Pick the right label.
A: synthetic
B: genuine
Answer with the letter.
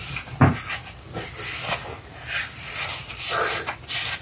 B